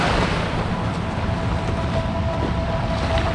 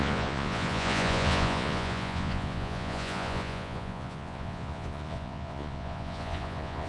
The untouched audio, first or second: first